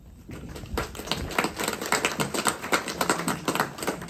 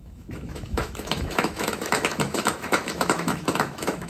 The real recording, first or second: first